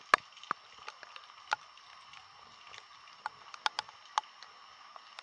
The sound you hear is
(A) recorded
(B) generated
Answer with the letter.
A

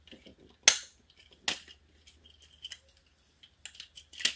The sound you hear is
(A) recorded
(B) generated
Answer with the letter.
A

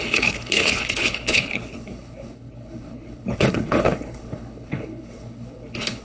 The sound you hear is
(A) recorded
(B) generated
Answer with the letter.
B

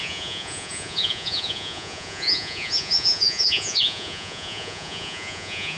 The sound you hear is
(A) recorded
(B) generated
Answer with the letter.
B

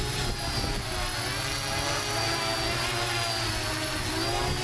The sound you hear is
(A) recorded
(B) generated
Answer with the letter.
A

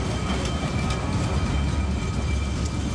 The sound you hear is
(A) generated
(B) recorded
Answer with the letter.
B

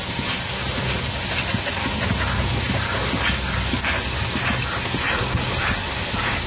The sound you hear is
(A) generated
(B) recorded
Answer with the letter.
B